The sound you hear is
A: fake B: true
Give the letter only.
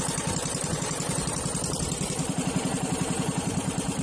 A